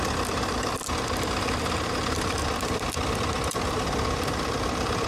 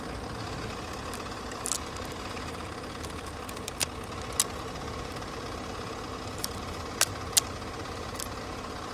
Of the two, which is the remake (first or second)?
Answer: first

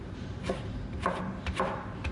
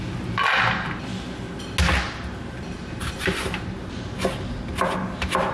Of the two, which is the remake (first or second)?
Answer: first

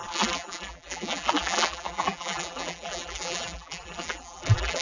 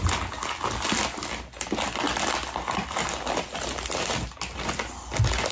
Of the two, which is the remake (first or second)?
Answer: first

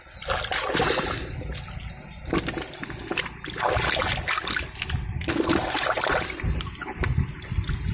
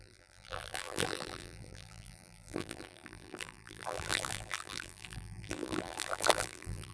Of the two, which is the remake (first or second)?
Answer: second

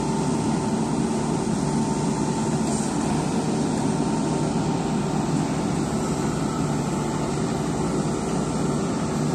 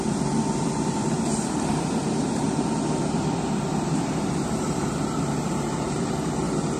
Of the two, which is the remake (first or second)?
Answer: second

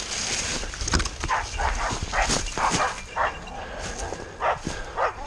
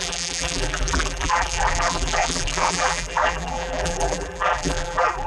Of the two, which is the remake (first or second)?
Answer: second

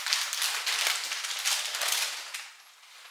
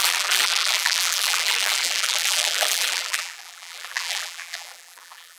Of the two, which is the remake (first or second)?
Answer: second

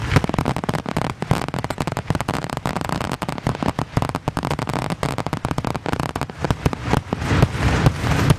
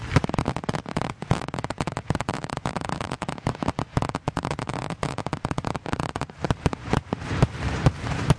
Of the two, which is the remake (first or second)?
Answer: second